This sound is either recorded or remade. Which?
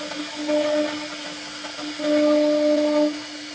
recorded